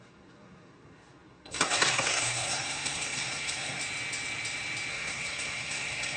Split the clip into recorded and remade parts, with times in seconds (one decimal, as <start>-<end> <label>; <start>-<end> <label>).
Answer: 0.0-3.8 remade; 3.8-4.9 recorded; 4.9-6.2 remade